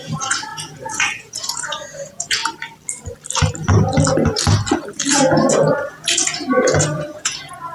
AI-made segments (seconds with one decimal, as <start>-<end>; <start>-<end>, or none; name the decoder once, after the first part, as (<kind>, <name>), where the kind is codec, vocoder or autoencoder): 0.0-2.4 (vocoder, Vocos); 5.5-7.7